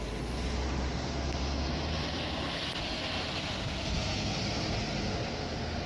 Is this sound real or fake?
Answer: real